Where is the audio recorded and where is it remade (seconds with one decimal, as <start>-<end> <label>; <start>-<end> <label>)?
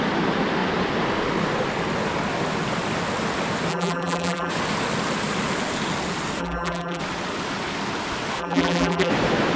0.0-3.7 recorded; 3.7-4.5 remade; 4.5-6.4 recorded; 6.4-7.0 remade; 7.0-8.4 recorded; 8.4-9.1 remade; 9.1-9.6 recorded